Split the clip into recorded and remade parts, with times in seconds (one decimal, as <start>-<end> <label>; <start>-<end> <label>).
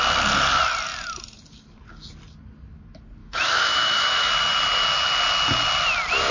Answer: 0.0-3.2 recorded; 3.2-4.3 remade; 4.3-6.3 recorded